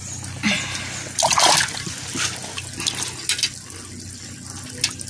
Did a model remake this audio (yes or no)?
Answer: no